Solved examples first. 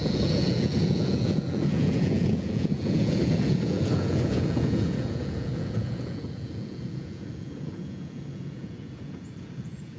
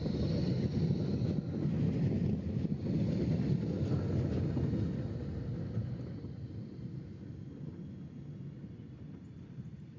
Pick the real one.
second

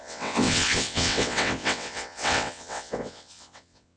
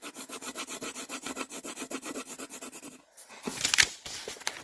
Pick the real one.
second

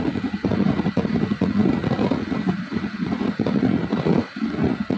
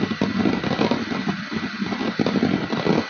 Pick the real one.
second